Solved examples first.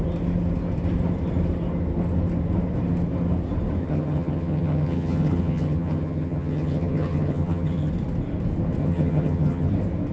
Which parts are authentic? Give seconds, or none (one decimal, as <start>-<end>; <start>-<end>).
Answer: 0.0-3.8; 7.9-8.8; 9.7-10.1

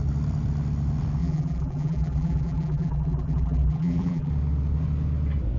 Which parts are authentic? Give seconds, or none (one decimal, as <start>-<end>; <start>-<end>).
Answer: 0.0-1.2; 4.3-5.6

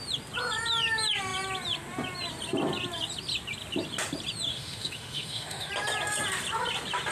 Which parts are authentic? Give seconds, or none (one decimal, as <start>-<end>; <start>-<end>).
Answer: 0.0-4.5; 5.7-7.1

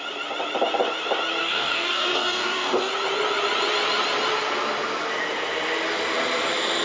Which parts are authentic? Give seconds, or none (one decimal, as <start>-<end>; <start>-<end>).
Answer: 0.0-1.4; 2.9-6.8

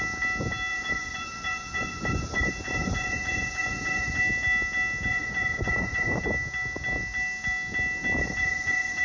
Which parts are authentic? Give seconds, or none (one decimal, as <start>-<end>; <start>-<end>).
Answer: 0.0-0.7; 4.2-5.1; 6.2-8.2

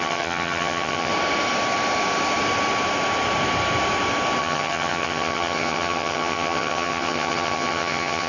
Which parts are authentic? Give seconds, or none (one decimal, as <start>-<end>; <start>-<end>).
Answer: 1.1-4.4

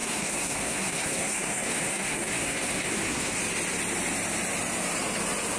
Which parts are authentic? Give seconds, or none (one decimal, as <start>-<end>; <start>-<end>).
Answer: 3.4-5.6

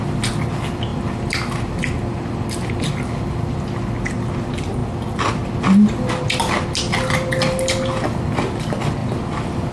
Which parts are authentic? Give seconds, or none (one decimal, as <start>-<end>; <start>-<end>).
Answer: 0.0-0.9; 2.9-9.7